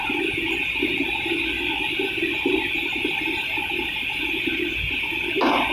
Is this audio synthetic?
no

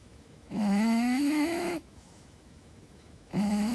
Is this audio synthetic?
yes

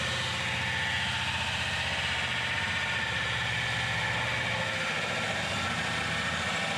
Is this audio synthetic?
no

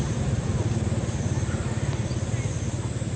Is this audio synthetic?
no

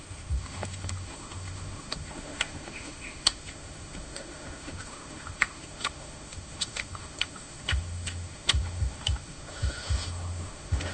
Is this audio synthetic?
yes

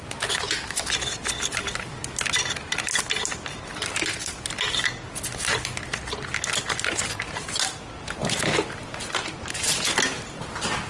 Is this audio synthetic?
no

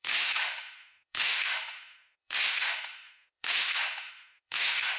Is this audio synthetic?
yes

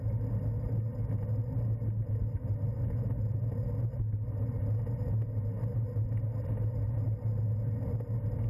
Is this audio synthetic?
no